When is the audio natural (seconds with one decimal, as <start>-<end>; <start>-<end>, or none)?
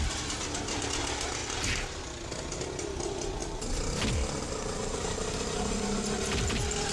0.0-6.9